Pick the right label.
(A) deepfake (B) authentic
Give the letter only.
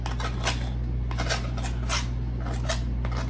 B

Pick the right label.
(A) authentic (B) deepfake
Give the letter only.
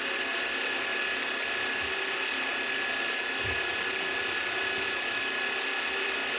B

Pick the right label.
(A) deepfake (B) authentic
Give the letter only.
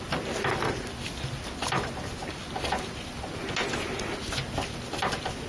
B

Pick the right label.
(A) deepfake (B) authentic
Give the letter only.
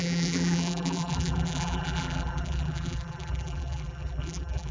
A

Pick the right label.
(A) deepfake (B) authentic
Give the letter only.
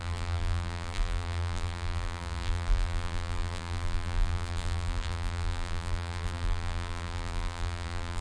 A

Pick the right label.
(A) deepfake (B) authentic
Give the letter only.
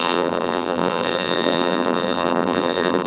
A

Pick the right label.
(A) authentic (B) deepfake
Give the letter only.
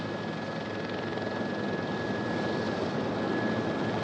A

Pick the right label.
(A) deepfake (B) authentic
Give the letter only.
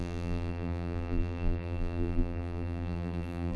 A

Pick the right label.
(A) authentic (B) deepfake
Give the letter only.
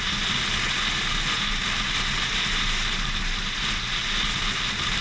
A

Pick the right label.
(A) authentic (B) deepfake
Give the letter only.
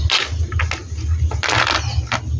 A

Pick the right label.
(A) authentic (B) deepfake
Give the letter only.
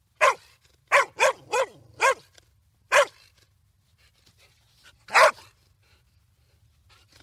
A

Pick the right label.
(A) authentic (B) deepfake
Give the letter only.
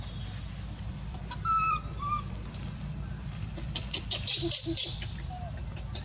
B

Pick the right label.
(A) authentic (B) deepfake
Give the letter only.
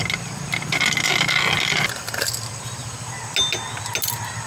A